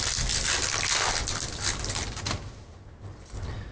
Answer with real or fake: real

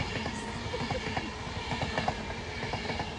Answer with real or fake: real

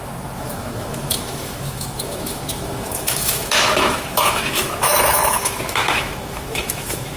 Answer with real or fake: fake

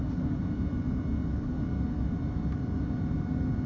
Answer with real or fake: real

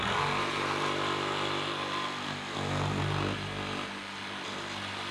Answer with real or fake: real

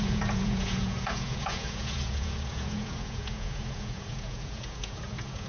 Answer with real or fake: fake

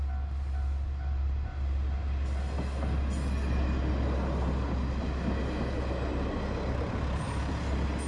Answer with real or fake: real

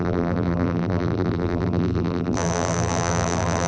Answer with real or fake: fake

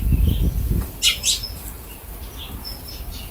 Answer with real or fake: real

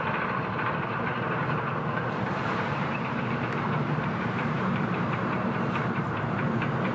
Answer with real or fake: fake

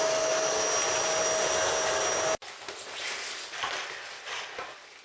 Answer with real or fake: real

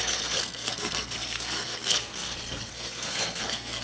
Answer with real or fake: fake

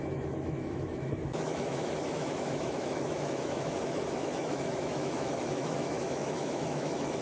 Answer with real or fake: fake